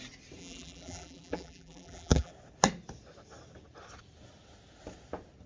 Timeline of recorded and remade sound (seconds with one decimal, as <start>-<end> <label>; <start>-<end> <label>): 0.0-0.4 recorded; 0.4-2.3 remade; 2.3-5.5 recorded